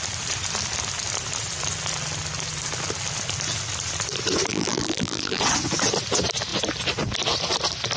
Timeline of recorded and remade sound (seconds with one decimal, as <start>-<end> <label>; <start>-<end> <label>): 0.0-4.5 recorded; 4.5-5.4 remade; 5.4-8.0 recorded